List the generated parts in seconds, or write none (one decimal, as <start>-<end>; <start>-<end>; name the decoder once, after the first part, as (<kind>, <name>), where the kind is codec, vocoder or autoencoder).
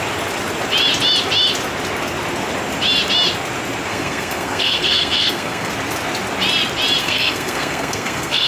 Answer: 3.9-5.7 (codec, SNAC); 7.0-8.5